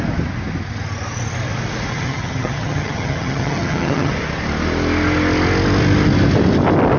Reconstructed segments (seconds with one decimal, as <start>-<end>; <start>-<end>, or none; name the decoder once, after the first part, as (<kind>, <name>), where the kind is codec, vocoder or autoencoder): 1.9-4.1 (vocoder, HiFi-GAN)